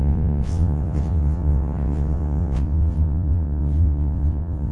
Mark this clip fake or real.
fake